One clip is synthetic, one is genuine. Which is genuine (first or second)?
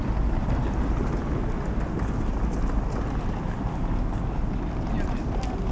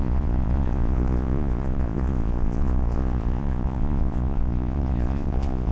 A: first